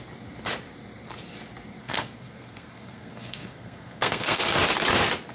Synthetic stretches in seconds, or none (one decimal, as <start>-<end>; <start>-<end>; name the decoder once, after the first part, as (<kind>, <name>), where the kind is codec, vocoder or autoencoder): 1.8-4.4 (codec, SNAC)